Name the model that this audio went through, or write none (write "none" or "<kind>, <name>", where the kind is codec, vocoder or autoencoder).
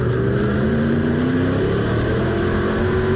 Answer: vocoder, BigVGAN v2